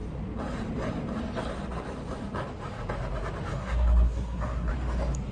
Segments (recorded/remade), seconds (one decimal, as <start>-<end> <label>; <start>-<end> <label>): 0.0-3.5 recorded; 3.5-4.7 remade; 4.7-5.3 recorded